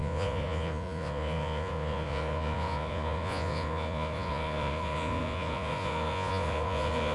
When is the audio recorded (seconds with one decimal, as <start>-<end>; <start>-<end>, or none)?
none